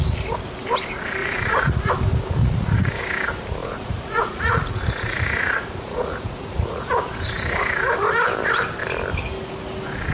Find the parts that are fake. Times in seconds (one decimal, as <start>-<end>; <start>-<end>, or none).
1.2-1.9; 2.4-3.0; 3.6-6.9